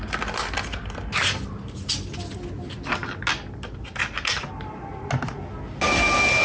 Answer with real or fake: real